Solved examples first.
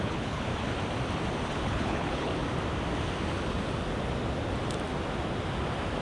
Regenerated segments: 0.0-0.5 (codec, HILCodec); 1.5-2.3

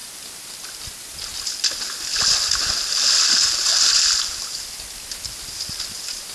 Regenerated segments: none